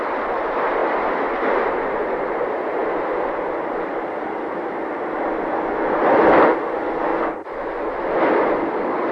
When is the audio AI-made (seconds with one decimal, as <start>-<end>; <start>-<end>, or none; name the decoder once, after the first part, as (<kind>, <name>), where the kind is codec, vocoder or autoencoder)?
0.0-0.8 (vocoder, BigVGAN v2); 1.7-7.1; 7.8-9.1